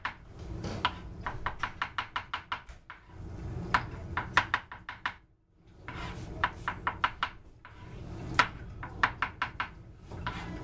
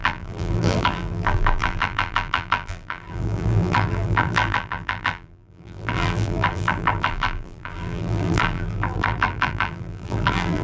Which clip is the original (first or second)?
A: first